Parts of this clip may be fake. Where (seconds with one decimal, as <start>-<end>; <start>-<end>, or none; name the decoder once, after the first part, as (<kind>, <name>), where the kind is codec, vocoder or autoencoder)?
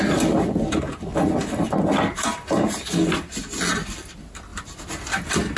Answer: none